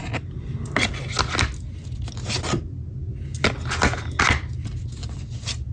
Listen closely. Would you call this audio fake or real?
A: real